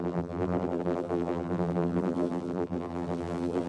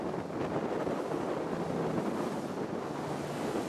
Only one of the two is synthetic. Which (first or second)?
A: first